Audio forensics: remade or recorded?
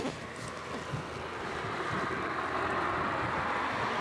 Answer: recorded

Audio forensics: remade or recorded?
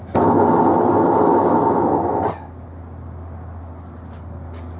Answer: recorded